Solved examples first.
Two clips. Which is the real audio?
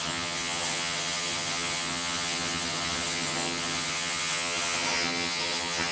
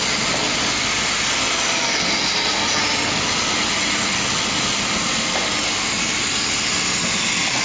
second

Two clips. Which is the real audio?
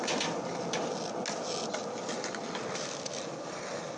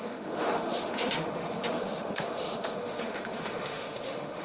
first